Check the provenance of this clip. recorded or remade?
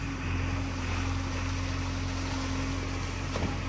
recorded